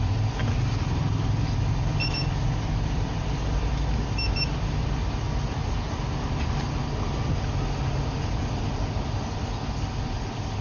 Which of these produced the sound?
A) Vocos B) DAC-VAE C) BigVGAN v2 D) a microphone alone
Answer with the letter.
D